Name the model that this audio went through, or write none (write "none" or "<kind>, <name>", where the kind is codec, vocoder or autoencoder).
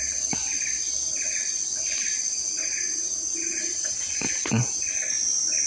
none